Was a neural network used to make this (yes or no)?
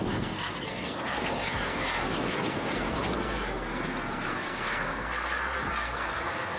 yes